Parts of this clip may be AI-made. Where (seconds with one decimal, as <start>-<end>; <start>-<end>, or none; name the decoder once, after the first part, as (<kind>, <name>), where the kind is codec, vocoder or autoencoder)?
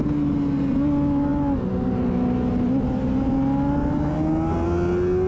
none